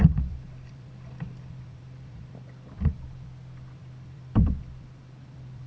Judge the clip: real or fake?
fake